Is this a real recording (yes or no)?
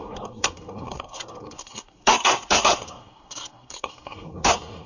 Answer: no